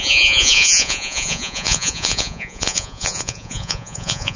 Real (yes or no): no